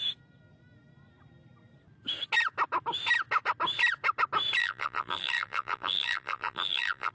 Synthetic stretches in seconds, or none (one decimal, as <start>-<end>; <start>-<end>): 4.6-7.1